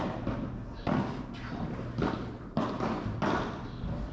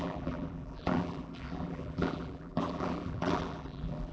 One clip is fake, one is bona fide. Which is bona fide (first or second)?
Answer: first